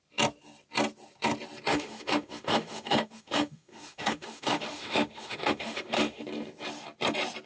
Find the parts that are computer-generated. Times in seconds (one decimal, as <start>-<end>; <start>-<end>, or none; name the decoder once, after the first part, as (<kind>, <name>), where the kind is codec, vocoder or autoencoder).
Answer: 1.7-6.2 (autoencoder, DAC-VAE)

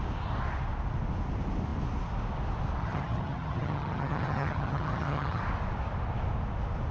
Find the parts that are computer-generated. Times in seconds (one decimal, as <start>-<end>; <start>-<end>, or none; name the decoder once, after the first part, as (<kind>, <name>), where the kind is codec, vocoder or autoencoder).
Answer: 2.8-5.4 (vocoder, HiFi-GAN)

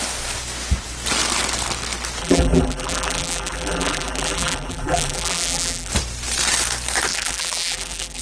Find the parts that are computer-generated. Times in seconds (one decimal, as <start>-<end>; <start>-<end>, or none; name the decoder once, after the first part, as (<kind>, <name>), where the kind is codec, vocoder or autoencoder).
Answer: 2.2-5.9 (vocoder, BigVGAN v2); 7.1-8.2

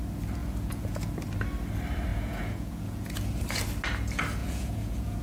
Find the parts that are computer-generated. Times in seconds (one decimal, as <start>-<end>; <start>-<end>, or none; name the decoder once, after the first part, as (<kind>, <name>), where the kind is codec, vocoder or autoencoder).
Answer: 0.4-1.1 (vocoder, Vocos); 2.1-3.1; 4.4-5.2